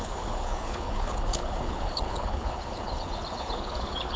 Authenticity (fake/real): fake